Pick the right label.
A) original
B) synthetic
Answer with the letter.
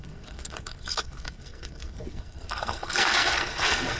B